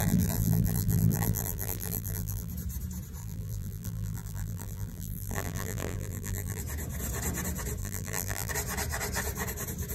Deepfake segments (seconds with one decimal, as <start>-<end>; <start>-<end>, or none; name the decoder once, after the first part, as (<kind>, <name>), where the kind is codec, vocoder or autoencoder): 0.0-2.5 (vocoder, BigVGAN v2); 3.2-6.6; 7.8-8.5